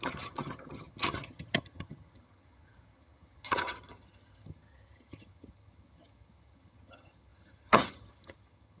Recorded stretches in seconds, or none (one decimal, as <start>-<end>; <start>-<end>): none